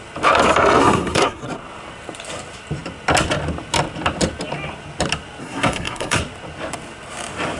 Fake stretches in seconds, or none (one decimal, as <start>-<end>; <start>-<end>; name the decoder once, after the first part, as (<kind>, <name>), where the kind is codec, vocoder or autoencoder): 0.8-1.4 (codec, SNAC); 5.4-6.2